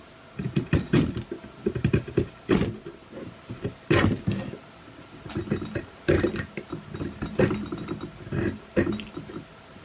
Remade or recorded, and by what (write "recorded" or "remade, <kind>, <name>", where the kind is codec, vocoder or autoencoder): recorded